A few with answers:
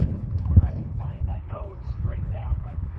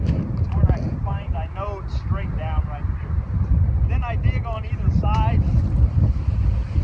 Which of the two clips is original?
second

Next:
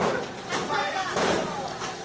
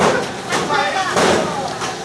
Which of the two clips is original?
second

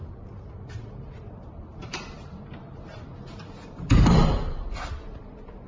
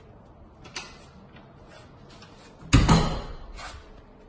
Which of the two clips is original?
second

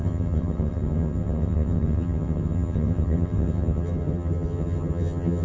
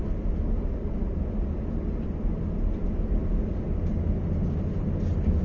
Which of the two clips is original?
second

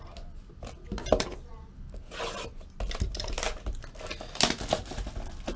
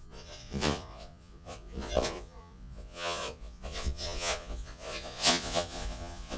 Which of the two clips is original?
first